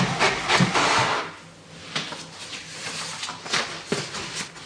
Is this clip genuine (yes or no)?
yes